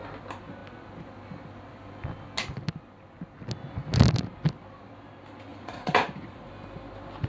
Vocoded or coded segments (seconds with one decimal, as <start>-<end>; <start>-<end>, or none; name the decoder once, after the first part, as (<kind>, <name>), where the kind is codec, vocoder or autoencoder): 5.5-6.5 (vocoder, Vocos)